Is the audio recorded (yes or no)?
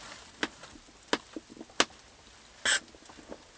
yes